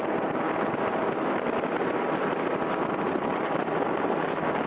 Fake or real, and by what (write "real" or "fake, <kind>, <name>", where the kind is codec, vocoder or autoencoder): real